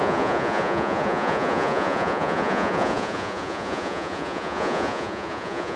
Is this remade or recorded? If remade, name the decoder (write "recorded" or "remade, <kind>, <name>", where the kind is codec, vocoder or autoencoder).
remade, vocoder, Vocos